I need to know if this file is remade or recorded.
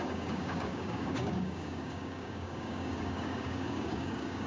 remade